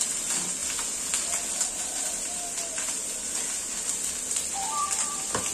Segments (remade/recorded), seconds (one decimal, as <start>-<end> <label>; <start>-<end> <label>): 0.0-0.6 remade; 0.6-1.6 recorded; 1.6-3.0 remade; 3.0-3.9 recorded; 3.9-5.5 remade